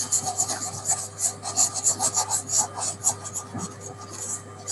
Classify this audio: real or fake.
real